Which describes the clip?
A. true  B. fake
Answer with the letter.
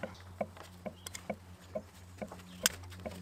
A